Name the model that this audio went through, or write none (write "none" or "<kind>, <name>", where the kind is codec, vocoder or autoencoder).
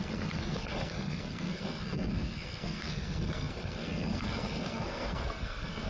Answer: codec, SNAC